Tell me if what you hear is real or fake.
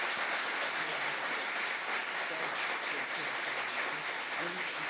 real